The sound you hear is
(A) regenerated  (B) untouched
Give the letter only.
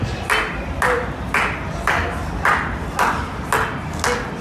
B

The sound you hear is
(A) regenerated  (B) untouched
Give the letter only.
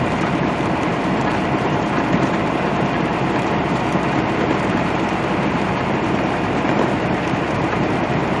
A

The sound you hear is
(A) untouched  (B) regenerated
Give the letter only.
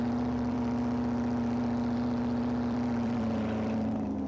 B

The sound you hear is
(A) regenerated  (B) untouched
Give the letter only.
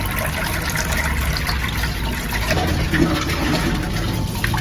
B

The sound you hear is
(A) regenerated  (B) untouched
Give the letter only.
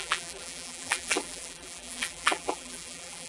A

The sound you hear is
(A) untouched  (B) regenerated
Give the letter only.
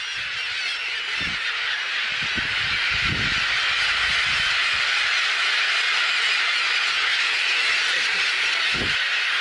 A